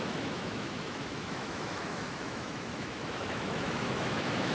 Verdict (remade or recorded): remade